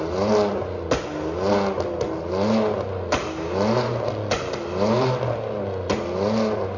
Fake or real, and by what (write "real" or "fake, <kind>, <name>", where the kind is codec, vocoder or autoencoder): real